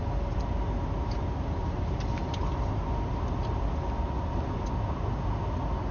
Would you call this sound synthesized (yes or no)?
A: no